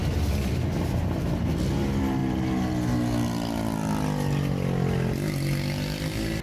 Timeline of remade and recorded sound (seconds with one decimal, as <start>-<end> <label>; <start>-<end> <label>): 0.0-6.4 recorded